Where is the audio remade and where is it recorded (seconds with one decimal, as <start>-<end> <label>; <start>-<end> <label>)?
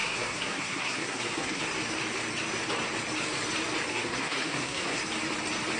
0.0-1.6 remade; 1.6-3.9 recorded; 3.9-5.0 remade; 5.0-5.8 recorded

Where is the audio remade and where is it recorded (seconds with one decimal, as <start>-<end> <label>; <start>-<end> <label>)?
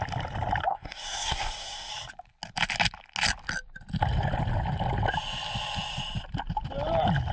0.0-0.7 recorded; 0.7-1.9 remade; 1.9-7.3 recorded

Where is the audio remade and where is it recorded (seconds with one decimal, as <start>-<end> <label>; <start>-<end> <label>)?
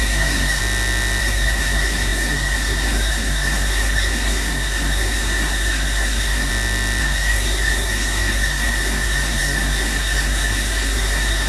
0.0-0.6 remade; 0.6-1.2 recorded; 1.2-6.5 remade; 6.5-7.0 recorded; 7.0-11.5 remade